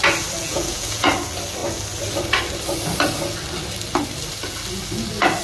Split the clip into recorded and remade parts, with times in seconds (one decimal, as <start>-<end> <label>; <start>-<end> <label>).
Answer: 0.0-0.4 recorded; 0.4-1.1 remade; 1.1-5.4 recorded